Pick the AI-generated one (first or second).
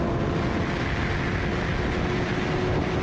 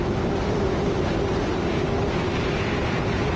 second